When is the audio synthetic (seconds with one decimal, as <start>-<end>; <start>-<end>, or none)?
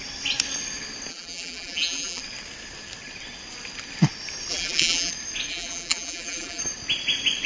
1.1-2.2; 4.5-5.1; 5.5-6.6